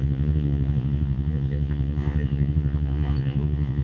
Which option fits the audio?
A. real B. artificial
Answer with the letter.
B